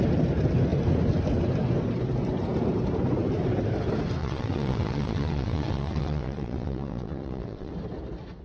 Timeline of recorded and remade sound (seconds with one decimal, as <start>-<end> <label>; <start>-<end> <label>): 0.0-4.2 recorded; 4.2-7.7 remade; 7.7-8.4 recorded